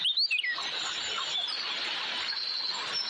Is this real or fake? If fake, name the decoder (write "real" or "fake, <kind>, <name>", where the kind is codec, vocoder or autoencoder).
real